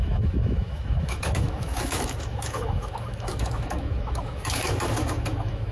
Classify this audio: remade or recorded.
remade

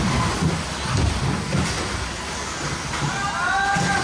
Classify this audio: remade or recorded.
recorded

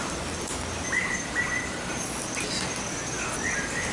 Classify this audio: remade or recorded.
recorded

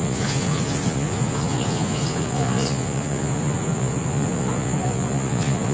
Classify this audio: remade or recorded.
remade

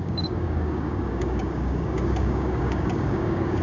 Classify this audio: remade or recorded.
remade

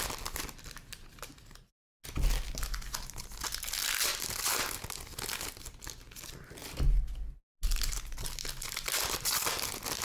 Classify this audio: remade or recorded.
recorded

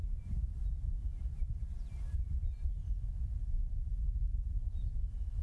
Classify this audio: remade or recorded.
recorded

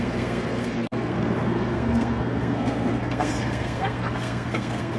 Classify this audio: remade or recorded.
remade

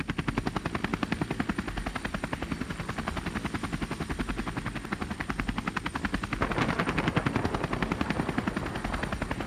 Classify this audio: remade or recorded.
recorded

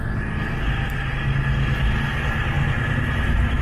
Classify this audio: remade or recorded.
recorded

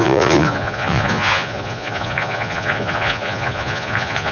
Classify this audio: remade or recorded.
remade